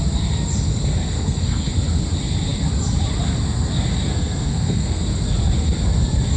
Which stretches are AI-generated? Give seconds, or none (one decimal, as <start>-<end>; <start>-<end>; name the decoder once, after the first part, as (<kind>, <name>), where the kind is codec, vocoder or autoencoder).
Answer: 0.7-1.7 (codec, SNAC); 4.1-5.0